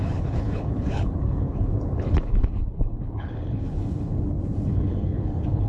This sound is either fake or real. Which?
fake